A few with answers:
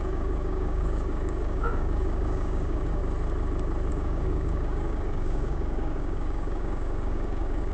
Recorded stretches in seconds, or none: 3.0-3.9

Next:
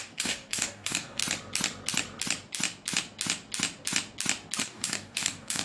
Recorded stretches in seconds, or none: 1.2-4.6

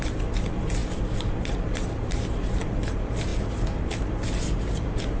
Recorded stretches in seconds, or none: 0.0-5.2

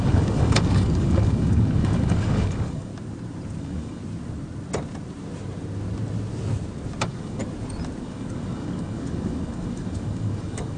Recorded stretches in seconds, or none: 2.9-3.6; 4.0-7.0; 7.4-8.0

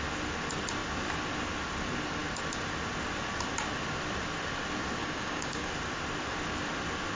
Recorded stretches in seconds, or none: 0.0-5.0; 5.7-7.1

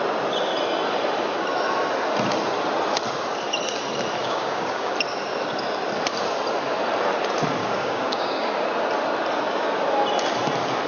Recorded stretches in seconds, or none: 0.0-4.2; 4.9-7.6; 8.5-10.9

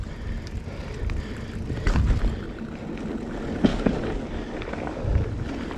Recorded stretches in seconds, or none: 0.0-3.7; 5.0-5.8